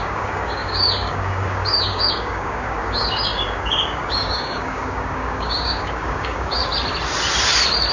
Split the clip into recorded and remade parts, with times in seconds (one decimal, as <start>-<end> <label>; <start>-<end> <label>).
0.0-6.6 remade; 6.6-7.9 recorded